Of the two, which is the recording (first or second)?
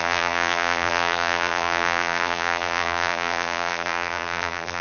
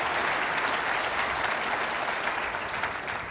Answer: second